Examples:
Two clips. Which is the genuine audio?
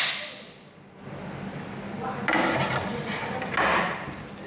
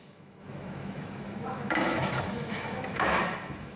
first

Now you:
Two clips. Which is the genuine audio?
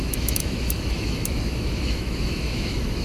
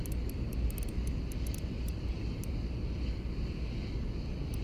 second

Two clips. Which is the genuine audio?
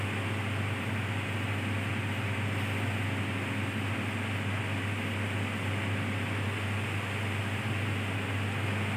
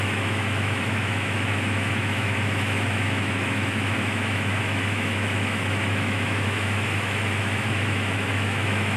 first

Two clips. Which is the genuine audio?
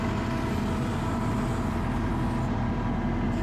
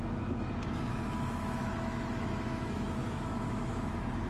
first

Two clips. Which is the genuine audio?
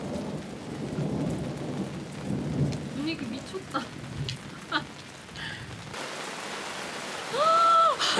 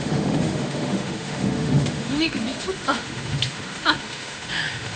first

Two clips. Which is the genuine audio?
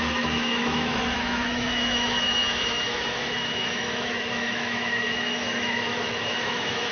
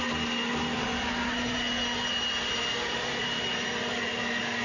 second